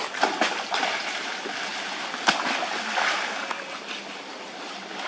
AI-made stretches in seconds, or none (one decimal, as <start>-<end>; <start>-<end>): none